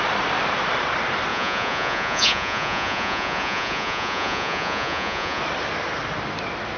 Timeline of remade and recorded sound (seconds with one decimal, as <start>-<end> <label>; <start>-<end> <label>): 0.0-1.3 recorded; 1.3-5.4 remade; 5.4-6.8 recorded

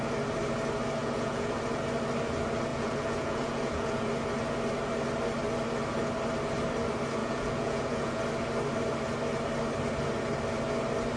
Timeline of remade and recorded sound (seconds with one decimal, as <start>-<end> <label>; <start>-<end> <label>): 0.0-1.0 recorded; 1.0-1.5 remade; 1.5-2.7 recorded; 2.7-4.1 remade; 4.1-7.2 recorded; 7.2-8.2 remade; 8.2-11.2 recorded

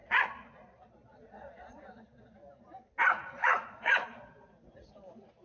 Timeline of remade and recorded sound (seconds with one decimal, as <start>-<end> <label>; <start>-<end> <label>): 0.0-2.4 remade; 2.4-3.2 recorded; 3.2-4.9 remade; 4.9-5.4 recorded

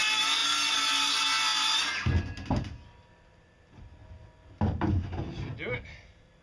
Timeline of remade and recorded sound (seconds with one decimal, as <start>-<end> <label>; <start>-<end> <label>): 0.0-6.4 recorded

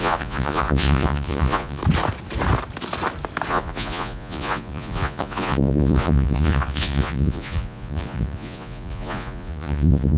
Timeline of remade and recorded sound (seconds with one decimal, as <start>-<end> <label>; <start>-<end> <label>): 0.0-1.8 remade; 1.8-3.5 recorded; 3.5-10.2 remade